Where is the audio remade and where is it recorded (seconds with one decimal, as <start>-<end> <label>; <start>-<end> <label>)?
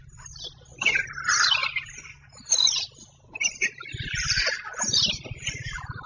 0.0-6.1 recorded